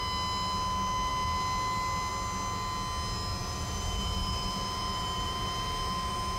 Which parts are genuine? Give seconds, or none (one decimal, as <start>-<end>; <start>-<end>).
0.0-3.4